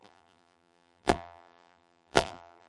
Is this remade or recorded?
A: remade